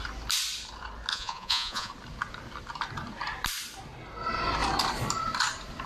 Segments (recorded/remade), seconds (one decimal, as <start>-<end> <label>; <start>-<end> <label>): 0.0-1.1 recorded; 1.1-1.9 remade; 1.9-5.9 recorded